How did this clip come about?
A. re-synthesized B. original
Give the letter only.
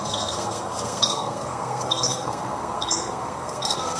A